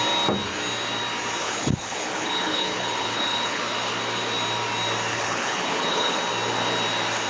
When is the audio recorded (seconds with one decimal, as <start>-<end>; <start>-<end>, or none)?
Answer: 0.0-1.4; 3.6-5.1; 6.2-7.3